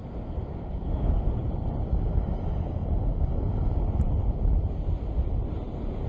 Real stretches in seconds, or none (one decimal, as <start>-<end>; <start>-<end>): 1.4-6.1